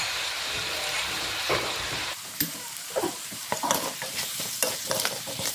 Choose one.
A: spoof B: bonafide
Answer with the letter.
A